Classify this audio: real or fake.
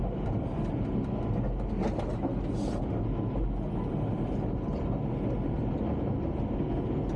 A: real